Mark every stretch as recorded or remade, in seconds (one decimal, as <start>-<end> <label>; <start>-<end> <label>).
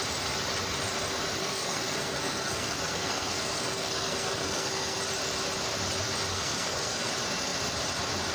0.0-1.4 recorded; 1.4-5.0 remade; 5.0-6.3 recorded; 6.3-7.1 remade; 7.1-8.3 recorded